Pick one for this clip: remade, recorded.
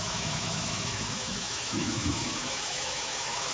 remade